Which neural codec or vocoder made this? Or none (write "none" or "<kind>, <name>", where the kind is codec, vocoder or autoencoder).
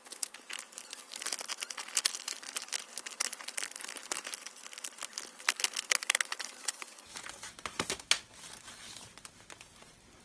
none